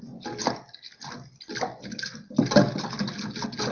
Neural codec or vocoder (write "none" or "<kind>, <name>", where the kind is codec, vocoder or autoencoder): none